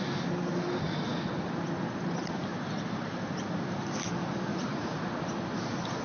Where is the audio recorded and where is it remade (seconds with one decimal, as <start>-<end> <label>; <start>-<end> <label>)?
0.0-4.5 recorded; 4.5-5.1 remade; 5.1-6.0 recorded